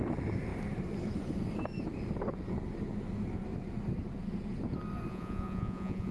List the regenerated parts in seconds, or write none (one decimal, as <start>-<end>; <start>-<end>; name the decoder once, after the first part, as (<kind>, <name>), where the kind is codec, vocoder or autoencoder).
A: 5.1-6.1 (vocoder, Vocos)